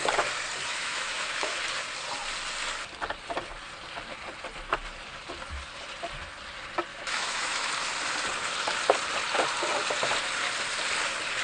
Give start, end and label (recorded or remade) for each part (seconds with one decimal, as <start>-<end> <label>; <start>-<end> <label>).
0.0-0.7 recorded; 0.7-1.6 remade; 1.6-6.9 recorded; 6.9-7.7 remade; 7.7-11.4 recorded